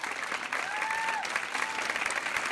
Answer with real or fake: real